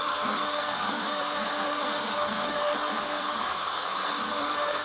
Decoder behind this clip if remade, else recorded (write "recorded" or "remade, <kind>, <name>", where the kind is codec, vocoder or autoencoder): remade, codec, SNAC